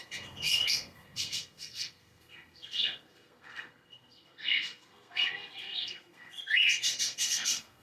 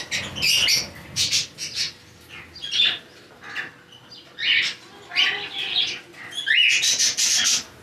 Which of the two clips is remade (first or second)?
first